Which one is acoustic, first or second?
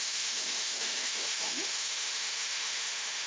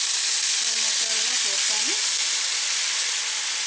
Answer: second